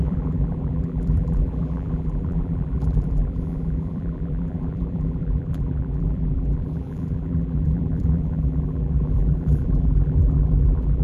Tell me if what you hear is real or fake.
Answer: fake